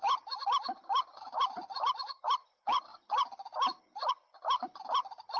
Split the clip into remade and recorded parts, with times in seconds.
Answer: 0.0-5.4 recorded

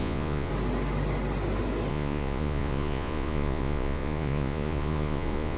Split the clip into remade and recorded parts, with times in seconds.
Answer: 0.0-0.5 remade; 0.5-1.9 recorded; 1.9-5.6 remade

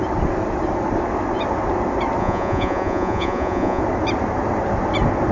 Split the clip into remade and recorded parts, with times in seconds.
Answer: 0.0-2.2 recorded; 2.2-3.8 remade; 3.8-5.3 recorded

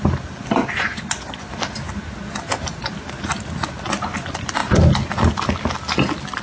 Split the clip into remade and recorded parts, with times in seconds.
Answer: 0.0-0.6 recorded; 0.6-1.5 remade; 1.5-6.4 recorded

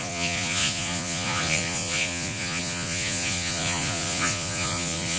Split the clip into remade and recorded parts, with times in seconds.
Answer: 0.0-5.2 remade

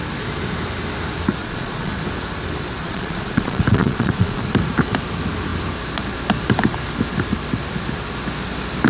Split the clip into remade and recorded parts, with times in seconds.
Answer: 0.0-1.4 recorded; 1.4-1.9 remade; 1.9-2.8 recorded; 2.8-4.4 remade; 4.4-8.9 recorded

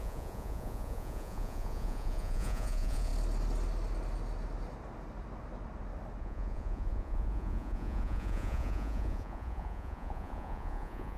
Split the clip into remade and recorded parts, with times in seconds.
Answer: 0.0-3.1 remade; 3.1-6.2 recorded; 6.2-11.2 remade

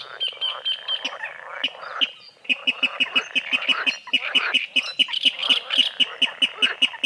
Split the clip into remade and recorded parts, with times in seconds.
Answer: 0.0-7.1 recorded